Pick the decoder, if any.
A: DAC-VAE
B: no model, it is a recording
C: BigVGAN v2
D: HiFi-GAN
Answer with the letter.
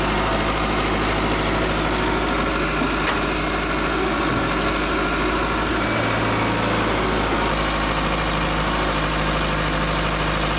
B